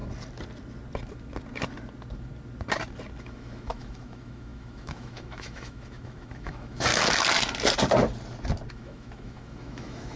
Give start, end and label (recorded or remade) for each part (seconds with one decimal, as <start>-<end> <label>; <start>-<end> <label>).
0.0-3.2 recorded; 3.2-6.9 remade; 6.9-8.7 recorded; 8.7-10.2 remade